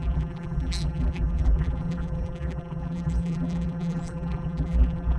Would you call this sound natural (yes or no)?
no